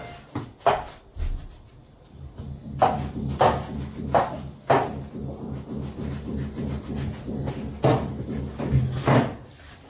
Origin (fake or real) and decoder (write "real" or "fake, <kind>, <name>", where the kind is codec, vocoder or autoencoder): real